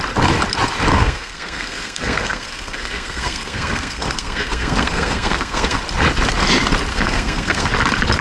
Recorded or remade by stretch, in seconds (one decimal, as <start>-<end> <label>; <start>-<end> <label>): 0.0-0.9 recorded; 0.9-5.8 remade; 5.8-6.9 recorded; 6.9-7.7 remade; 7.7-8.2 recorded